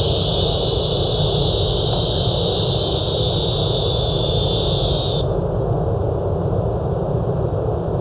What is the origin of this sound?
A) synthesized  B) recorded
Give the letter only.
B